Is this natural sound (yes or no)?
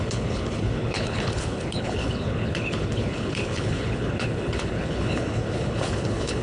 no